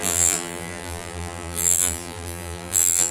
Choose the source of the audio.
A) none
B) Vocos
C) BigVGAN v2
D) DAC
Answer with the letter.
C